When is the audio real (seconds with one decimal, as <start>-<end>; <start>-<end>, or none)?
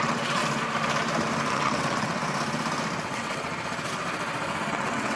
0.4-1.5; 2.2-3.0; 3.5-4.7